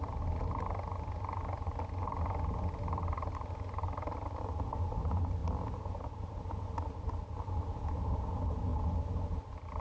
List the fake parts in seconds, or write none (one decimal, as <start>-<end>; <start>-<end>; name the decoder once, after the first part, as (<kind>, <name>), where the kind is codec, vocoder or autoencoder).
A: none